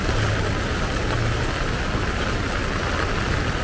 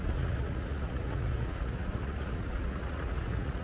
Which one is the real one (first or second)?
first